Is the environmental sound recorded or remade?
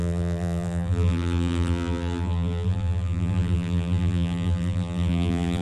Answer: remade